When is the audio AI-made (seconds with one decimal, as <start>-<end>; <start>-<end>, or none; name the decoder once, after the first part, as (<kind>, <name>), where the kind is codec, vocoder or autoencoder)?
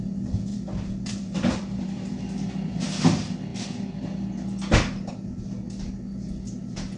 0.5-2.2 (vocoder, BigVGAN v2)